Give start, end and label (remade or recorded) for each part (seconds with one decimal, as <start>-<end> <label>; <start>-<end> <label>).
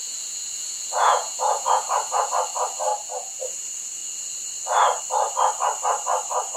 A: 0.0-2.3 remade; 2.3-2.9 recorded; 2.9-3.4 remade; 3.4-6.6 recorded